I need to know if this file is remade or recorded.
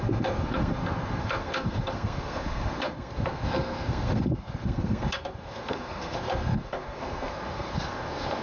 remade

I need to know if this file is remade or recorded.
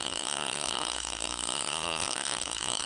remade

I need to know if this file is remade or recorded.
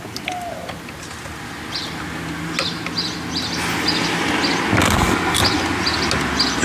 recorded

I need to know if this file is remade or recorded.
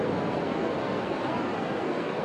remade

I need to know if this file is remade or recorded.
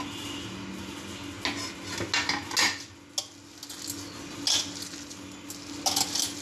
recorded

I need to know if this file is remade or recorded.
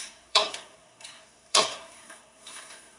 remade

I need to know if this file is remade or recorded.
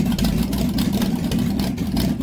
recorded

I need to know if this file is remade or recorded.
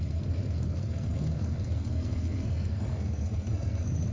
remade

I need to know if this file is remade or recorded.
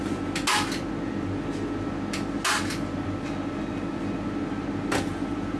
recorded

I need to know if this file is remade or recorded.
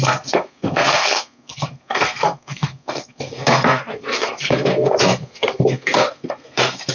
remade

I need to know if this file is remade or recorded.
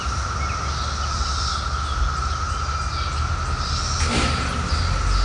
recorded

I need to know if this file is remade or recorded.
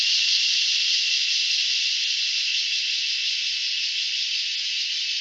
recorded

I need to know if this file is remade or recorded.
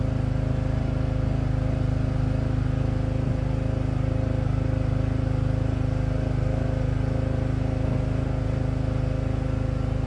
recorded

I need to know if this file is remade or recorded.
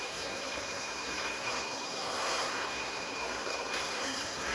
remade